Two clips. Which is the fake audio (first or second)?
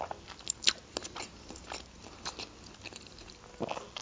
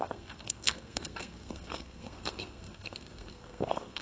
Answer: second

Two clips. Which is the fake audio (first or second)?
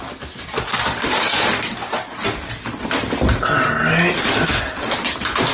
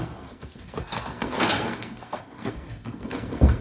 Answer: second